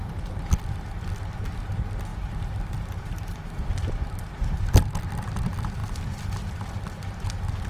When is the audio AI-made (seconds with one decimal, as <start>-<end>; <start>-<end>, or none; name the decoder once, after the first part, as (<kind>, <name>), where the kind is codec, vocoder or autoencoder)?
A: 0.0-1.0 (vocoder, BigVGAN v2); 2.1-5.0; 5.8-6.4